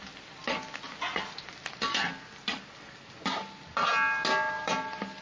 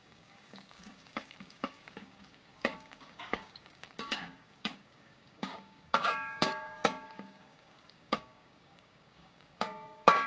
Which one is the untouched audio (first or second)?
first